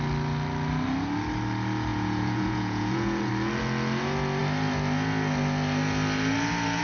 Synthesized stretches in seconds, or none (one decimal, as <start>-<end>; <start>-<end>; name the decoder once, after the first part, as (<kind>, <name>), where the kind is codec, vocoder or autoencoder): 1.9-3.3 (vocoder, Vocos)

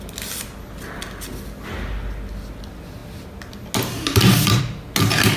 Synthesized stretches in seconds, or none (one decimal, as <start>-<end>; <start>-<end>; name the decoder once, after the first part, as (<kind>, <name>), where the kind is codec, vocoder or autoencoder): none

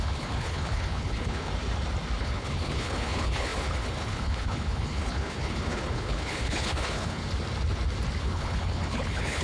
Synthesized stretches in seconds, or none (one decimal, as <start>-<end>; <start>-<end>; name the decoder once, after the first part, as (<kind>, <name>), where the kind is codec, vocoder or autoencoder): 0.0-1.5 (codec, HILCodec); 2.2-7.2; 8.2-9.4

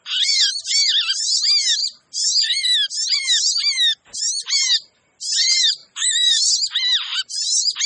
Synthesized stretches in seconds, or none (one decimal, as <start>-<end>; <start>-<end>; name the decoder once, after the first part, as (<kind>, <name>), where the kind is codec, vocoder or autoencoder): 5.8-6.5 (vocoder, BigVGAN v2)